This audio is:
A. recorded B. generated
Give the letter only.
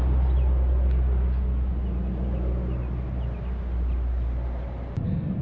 A